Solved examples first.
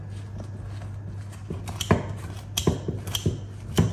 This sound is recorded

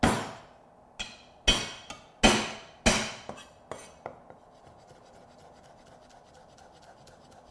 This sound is recorded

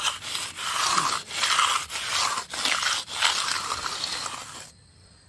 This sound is recorded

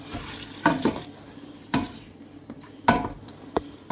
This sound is remade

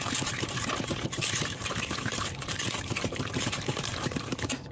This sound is remade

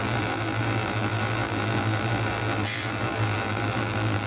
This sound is remade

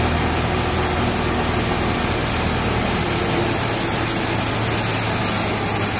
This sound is recorded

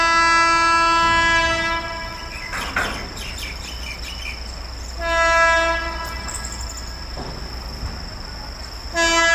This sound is recorded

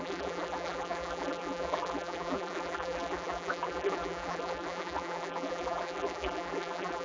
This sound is remade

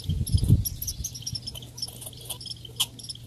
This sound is recorded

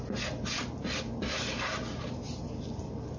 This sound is recorded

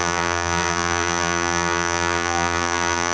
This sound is remade